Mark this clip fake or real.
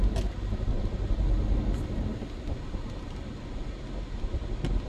real